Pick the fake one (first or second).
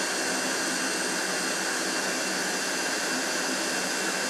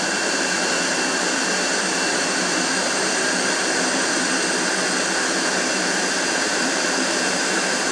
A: second